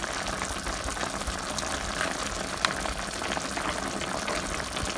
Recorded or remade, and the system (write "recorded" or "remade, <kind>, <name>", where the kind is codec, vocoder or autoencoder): recorded